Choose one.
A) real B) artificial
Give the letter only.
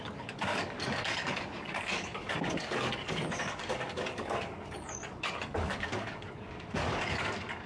B